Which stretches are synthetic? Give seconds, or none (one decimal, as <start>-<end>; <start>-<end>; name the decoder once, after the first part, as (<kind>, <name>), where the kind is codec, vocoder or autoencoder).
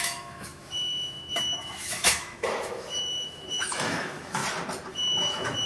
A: 0.0-4.4 (autoencoder, DAC-VAE); 4.9-5.7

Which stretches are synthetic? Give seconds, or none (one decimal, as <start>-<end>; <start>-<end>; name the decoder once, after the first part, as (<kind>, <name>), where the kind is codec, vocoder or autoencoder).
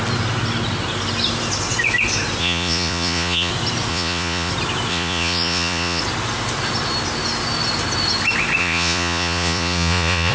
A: 2.4-3.5 (vocoder, Vocos); 3.9-4.5; 4.9-6.0; 8.6-10.3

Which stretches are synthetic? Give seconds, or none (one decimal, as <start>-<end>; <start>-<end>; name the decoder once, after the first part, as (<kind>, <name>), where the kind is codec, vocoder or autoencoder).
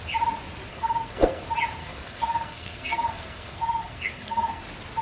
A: 0.7-1.4 (codec, SNAC); 1.8-4.6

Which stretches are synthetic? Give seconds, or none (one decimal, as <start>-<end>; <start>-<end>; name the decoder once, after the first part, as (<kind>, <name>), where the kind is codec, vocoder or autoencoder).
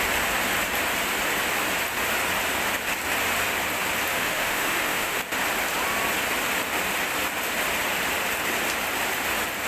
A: 4.1-5.2 (autoencoder, DAC-VAE)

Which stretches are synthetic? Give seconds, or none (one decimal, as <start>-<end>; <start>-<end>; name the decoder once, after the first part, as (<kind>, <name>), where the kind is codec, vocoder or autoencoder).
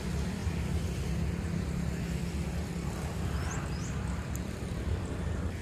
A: 0.0-0.4 (vocoder, BigVGAN v2); 3.8-5.6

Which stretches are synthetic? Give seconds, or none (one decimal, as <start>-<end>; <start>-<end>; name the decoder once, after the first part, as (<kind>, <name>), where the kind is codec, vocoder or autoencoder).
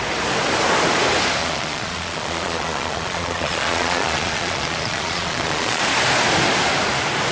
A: 1.4-5.8 (vocoder, Vocos)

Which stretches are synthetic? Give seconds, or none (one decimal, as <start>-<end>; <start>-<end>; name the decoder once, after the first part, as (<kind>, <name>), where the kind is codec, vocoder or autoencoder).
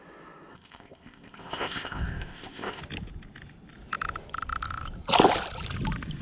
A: 0.5-2.8 (codec, ZipCodec)